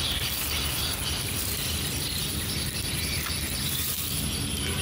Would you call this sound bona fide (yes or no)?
yes